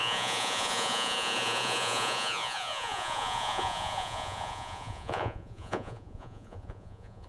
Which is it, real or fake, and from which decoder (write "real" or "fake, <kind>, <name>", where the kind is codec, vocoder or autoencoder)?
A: fake, vocoder, Vocos